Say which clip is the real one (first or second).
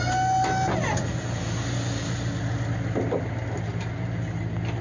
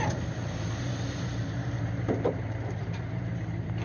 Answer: first